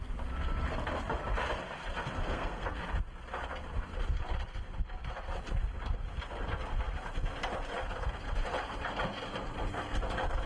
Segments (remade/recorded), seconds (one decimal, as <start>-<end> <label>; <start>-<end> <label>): 0.0-2.3 recorded; 2.3-2.8 remade; 2.8-10.5 recorded